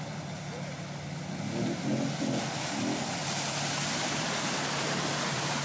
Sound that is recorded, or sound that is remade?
recorded